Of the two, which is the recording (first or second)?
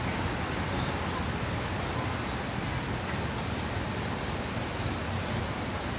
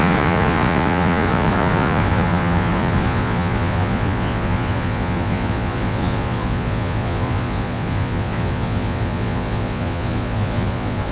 first